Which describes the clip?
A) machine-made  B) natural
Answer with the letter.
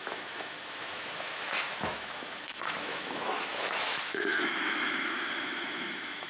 A